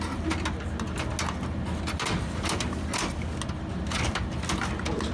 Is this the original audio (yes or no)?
yes